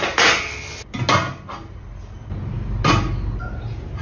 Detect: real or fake real